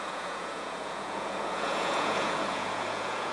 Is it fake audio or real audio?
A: fake